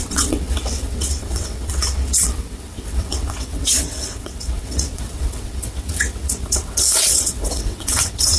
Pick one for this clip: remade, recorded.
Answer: remade